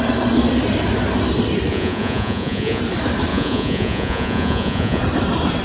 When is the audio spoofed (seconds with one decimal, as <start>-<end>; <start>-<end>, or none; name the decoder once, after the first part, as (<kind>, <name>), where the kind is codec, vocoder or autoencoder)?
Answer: 1.7-2.8 (vocoder, Vocos); 3.3-5.0